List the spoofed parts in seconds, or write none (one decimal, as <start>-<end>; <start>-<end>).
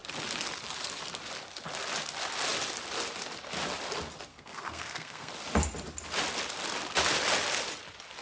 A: 4.3-5.3